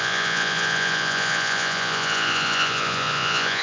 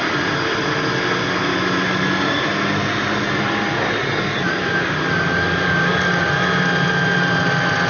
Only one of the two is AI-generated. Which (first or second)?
first